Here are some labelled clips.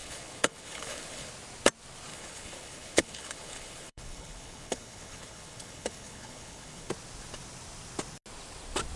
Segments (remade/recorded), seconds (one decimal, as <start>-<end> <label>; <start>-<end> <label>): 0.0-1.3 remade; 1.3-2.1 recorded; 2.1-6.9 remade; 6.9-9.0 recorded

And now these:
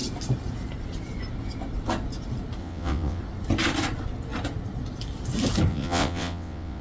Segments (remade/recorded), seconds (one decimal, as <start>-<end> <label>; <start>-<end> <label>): 0.0-2.6 recorded; 2.6-3.2 remade; 3.2-5.7 recorded; 5.7-6.8 remade

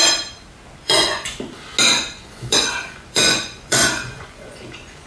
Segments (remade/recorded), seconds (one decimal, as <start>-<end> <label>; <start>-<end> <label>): 0.0-0.8 recorded; 0.8-1.4 remade; 1.4-1.9 recorded; 1.9-5.1 remade

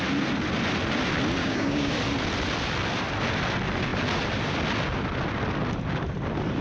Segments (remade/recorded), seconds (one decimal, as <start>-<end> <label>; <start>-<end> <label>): 0.0-1.4 recorded; 1.4-1.9 remade; 1.9-6.6 recorded

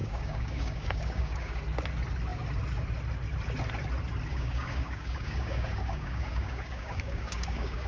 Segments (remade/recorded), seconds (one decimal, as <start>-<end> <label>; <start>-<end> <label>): 0.0-1.6 remade; 1.6-4.3 recorded; 4.3-7.9 remade

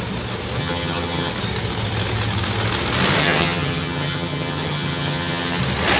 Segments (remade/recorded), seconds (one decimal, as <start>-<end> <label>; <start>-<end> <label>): 0.0-0.6 recorded; 0.6-1.3 remade; 1.3-3.2 recorded; 3.2-5.6 remade; 5.6-6.0 recorded

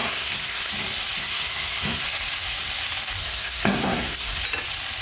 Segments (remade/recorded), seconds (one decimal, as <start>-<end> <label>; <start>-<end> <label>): 0.0-0.7 remade; 0.7-1.2 recorded; 1.2-2.0 remade; 2.0-3.2 recorded; 3.2-4.4 remade; 4.4-5.0 recorded

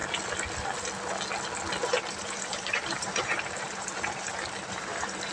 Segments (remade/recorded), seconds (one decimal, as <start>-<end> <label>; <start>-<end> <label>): 0.0-1.8 recorded; 1.8-5.3 remade